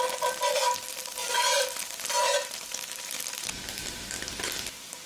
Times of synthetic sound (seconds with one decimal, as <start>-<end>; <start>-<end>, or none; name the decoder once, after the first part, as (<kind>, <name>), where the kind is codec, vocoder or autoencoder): none